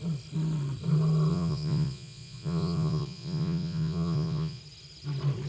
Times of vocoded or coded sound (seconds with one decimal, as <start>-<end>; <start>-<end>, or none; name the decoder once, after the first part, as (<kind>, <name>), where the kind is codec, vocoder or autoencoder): 1.3-4.6 (vocoder, Vocos)